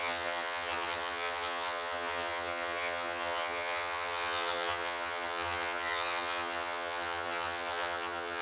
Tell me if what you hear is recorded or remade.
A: remade